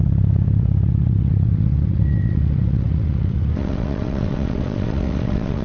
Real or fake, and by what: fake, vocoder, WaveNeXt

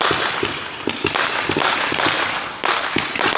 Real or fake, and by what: real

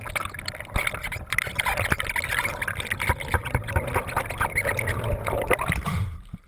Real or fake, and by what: real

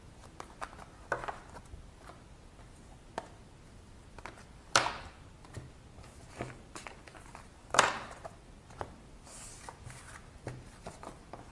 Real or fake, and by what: real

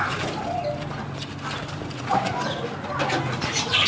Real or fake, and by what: real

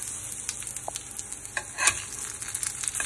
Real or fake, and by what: real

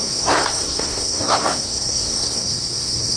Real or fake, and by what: fake, codec, SNAC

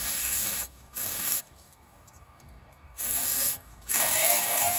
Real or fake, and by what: fake, codec, DAC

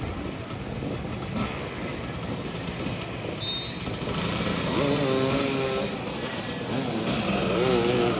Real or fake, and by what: real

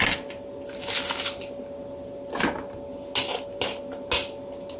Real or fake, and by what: real